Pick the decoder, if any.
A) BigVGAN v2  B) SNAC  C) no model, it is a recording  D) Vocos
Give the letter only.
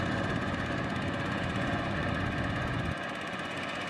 D